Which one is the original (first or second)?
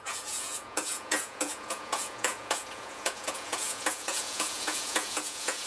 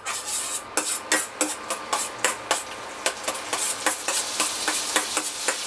second